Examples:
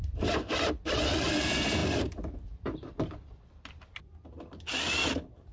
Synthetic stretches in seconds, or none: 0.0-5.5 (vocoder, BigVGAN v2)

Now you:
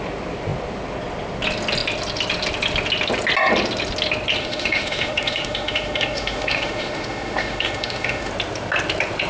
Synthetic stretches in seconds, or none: 4.4-8.3 (autoencoder, DAC-VAE)

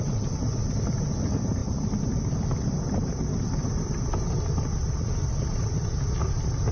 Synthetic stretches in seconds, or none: none